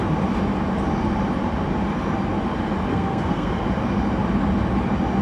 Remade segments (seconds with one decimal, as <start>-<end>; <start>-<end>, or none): 2.9-3.5